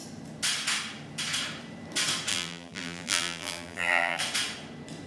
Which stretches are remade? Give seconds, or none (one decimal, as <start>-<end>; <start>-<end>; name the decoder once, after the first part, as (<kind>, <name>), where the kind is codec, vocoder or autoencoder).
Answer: 2.3-4.2 (vocoder, BigVGAN v2)